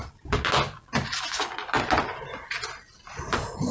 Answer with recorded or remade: recorded